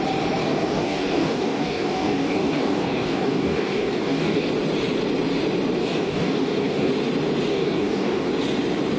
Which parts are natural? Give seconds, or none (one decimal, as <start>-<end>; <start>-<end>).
0.0-0.4; 4.5-5.8; 6.9-7.5; 8.3-9.0